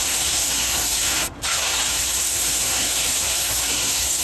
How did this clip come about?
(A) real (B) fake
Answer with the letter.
B